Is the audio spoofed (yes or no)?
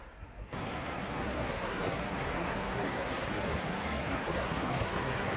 yes